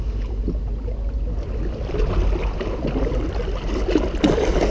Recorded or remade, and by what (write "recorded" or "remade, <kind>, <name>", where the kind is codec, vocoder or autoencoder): recorded